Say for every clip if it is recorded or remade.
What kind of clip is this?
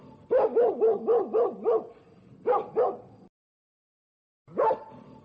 recorded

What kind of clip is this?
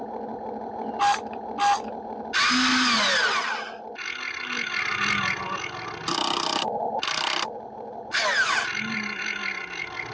recorded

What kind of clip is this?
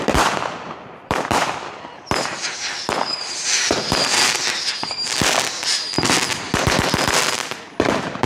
remade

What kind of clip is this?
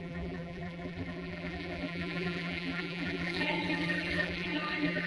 remade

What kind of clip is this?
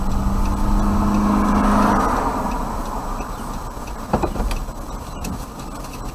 recorded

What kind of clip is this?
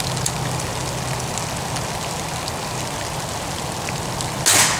recorded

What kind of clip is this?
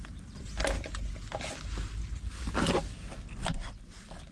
recorded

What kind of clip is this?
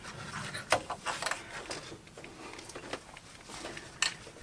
recorded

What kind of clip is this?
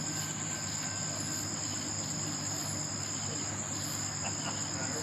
recorded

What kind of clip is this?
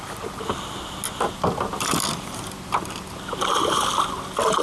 recorded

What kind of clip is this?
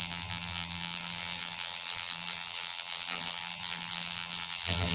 remade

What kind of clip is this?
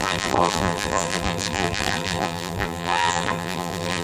remade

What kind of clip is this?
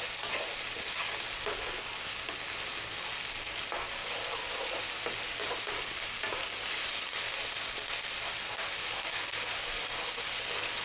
recorded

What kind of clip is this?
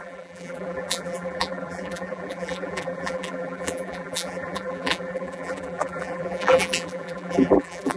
remade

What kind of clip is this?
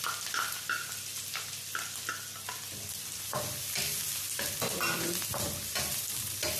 recorded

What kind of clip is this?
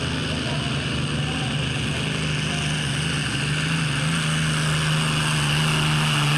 recorded